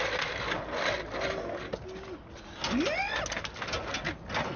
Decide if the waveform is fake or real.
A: real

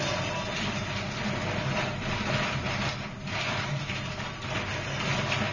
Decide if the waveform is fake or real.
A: real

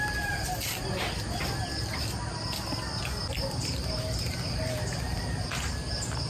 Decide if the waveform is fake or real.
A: real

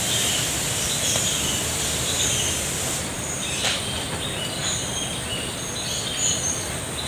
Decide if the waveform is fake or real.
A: real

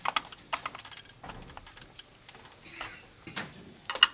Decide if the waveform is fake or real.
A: real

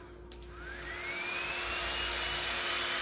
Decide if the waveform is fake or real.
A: real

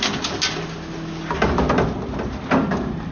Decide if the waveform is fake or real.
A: real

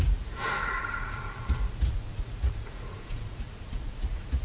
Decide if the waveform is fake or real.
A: fake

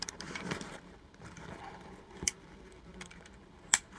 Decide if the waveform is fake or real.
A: fake